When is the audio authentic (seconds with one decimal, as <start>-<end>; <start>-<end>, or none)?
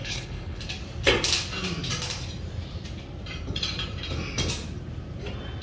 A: 0.6-5.6